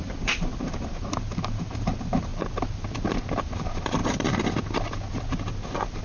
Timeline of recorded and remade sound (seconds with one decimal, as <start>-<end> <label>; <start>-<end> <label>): 0.0-2.3 remade; 2.3-3.4 recorded; 3.4-4.0 remade; 4.0-6.0 recorded